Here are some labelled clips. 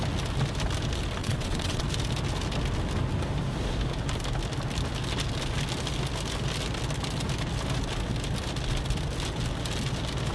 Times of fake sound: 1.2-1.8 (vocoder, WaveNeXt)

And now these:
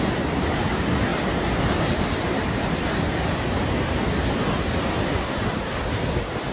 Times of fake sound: none

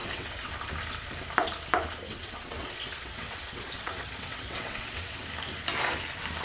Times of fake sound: 0.0-0.5 (vocoder, WaveNeXt); 2.1-5.2

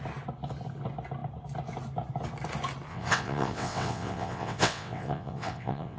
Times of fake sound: 2.9-6.0 (vocoder, WaveNeXt)

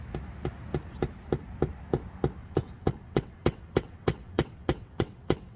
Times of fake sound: 2.4-5.6 (vocoder, WaveNeXt)

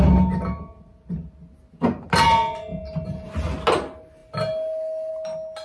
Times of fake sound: none

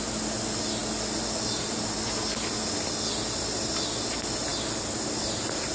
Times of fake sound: none

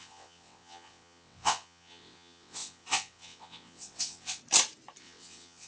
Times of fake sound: 0.0-4.4 (vocoder, WaveNeXt); 5.0-5.7